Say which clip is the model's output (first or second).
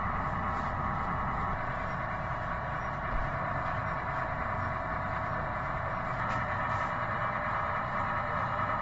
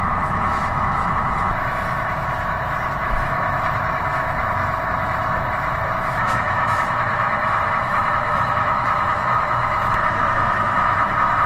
second